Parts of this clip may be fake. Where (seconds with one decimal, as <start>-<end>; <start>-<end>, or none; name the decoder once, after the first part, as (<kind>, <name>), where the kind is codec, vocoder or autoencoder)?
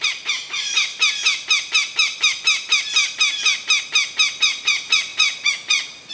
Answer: 0.0-0.9 (vocoder, Vocos); 4.4-6.1